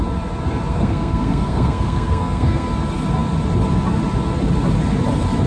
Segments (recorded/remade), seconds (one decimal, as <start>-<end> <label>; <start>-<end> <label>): 0.0-0.7 recorded; 0.7-2.7 remade; 2.7-5.5 recorded

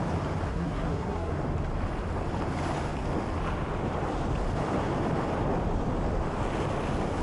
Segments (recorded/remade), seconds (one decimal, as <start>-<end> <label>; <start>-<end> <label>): 0.0-0.5 recorded; 0.5-1.3 remade; 1.3-7.2 recorded

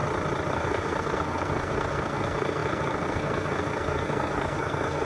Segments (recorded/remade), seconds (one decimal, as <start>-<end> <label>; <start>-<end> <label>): 0.0-0.5 recorded; 0.5-5.1 remade